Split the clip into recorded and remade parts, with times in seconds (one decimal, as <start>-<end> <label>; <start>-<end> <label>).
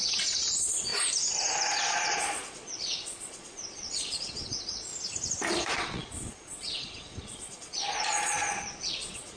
0.0-0.9 remade; 0.9-1.8 recorded; 1.8-4.9 remade; 4.9-5.5 recorded; 5.5-9.4 remade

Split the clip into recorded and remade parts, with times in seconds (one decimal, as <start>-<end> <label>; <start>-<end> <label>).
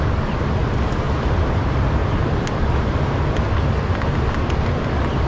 0.0-5.3 recorded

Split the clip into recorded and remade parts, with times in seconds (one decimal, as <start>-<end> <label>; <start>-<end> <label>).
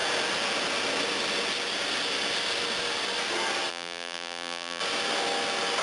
0.0-3.7 recorded; 3.7-4.8 remade; 4.8-5.8 recorded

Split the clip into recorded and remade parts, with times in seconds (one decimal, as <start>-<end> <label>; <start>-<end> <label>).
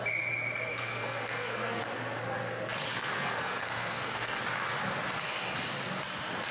0.0-0.7 recorded; 0.7-1.8 remade; 1.8-3.0 recorded; 3.0-4.4 remade; 4.4-6.5 recorded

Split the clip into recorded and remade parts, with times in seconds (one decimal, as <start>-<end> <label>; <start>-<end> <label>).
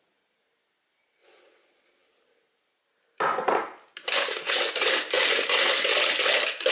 0.0-6.7 recorded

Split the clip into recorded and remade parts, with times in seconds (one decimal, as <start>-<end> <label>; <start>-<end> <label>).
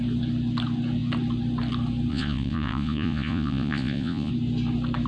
0.0-2.1 recorded; 2.1-4.3 remade; 4.3-5.1 recorded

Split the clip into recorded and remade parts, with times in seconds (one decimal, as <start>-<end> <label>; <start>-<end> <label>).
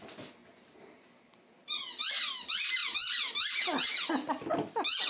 0.0-0.4 recorded; 0.4-2.4 remade; 2.4-5.1 recorded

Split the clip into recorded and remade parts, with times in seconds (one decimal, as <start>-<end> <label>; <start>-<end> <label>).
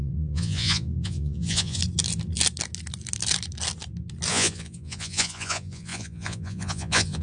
0.0-1.8 remade; 1.8-4.3 recorded; 4.3-7.2 remade